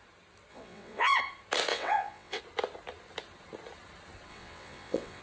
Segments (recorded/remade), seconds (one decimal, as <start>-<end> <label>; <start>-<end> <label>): 0.0-0.5 recorded; 0.5-1.2 remade; 1.2-1.7 recorded; 1.7-2.4 remade; 2.4-4.3 recorded; 4.3-5.2 remade